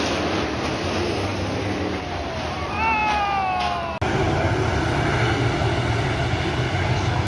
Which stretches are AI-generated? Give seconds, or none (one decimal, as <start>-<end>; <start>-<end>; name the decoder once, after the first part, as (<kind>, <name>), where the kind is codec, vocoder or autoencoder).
none

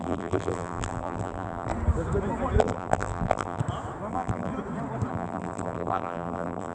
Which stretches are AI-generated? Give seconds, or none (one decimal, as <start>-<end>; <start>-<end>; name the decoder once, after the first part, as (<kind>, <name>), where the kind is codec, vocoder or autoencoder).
0.0-1.7 (vocoder, BigVGAN v2); 2.6-3.6; 4.1-4.5; 5.1-6.7

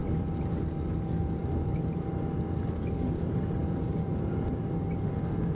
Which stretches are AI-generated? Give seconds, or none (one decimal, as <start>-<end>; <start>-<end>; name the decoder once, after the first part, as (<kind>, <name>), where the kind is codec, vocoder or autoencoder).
0.0-0.6 (vocoder, BigVGAN v2); 1.4-2.1; 3.6-4.6

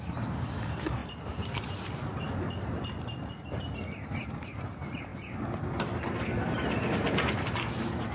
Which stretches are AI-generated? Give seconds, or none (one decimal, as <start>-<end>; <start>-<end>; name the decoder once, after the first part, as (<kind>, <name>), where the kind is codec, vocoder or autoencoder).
0.0-1.0 (vocoder, BigVGAN v2); 4.6-5.1; 6.4-8.1